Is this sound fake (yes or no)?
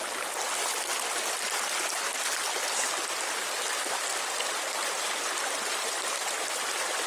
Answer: no